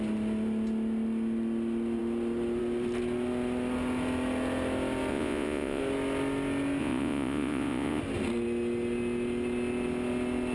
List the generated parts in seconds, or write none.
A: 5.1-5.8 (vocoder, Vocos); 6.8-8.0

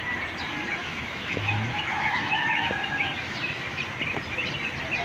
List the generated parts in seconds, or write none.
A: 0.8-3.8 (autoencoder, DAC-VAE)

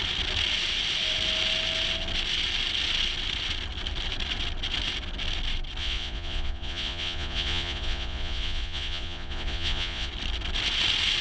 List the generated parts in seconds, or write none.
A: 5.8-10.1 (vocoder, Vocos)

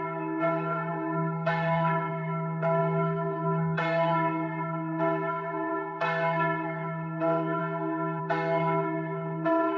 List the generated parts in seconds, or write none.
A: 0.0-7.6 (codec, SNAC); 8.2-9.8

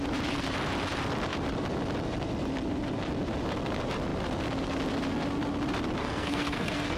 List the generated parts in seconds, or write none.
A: 6.0-7.0 (codec, SNAC)